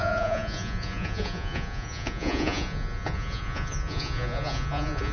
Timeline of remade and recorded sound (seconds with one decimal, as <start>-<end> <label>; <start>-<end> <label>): 0.0-5.1 remade